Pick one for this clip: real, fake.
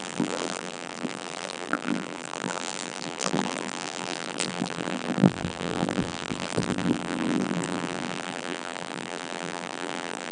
fake